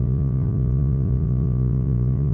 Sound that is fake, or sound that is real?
fake